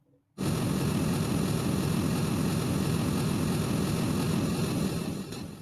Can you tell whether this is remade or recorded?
recorded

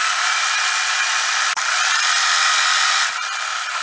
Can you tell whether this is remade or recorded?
recorded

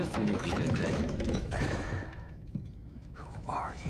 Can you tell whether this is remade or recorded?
remade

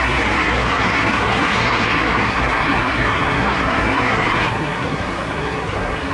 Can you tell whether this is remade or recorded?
remade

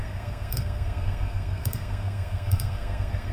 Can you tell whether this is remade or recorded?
remade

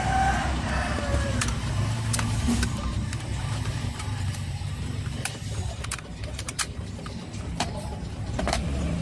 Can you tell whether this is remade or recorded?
remade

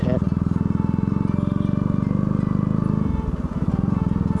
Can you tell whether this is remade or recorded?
recorded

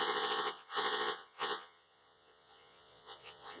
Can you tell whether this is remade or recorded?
remade